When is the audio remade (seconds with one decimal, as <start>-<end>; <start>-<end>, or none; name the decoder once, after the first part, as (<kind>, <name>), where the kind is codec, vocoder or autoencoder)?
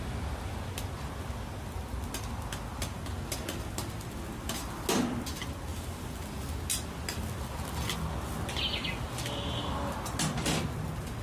none